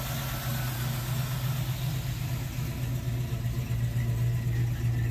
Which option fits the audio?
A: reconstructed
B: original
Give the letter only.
B